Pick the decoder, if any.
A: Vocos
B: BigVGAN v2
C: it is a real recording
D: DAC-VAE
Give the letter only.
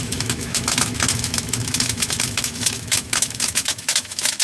D